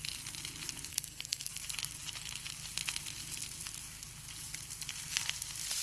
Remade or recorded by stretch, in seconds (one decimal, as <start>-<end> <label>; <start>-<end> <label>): 0.0-0.9 recorded; 0.9-1.5 remade; 1.5-5.8 recorded